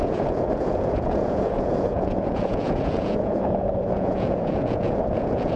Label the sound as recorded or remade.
remade